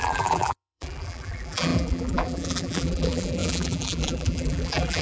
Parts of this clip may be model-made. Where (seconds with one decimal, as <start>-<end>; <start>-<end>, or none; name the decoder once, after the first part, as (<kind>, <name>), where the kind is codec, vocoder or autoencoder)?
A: 0.0-5.0 (vocoder, BigVGAN v2)